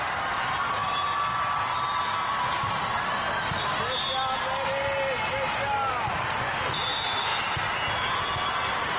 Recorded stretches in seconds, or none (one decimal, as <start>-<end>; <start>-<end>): 0.0-9.0